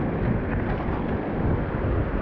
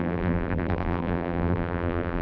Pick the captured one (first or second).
first